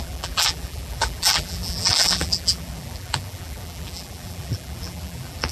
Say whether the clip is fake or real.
fake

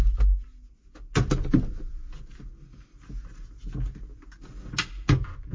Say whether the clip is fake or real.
real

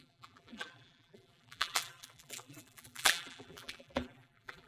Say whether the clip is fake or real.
fake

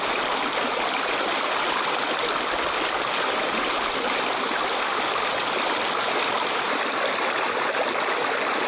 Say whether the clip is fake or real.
real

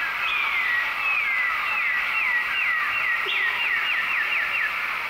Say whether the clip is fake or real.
real